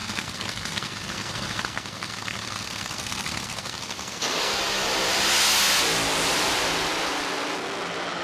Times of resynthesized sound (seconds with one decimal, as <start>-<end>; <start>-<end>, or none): 0.0-4.6